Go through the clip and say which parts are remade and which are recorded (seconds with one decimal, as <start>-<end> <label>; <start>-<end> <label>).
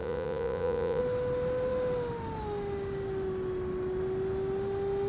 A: 0.0-1.0 remade; 1.0-5.1 recorded